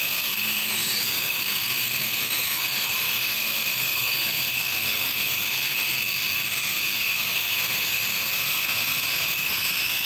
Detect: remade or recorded remade